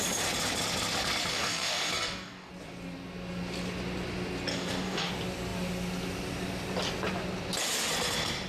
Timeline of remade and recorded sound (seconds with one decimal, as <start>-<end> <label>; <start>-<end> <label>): 0.0-1.3 recorded; 1.3-2.5 remade; 2.5-4.5 recorded; 4.5-5.1 remade; 5.1-8.5 recorded